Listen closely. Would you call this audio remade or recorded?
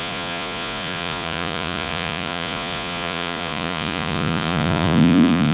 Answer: remade